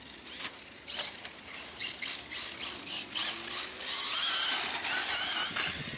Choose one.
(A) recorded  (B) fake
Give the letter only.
A